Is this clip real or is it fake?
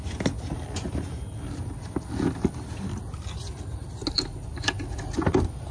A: real